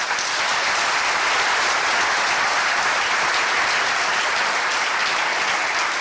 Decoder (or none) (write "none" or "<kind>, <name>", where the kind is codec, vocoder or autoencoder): none